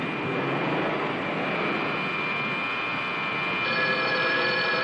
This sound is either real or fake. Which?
real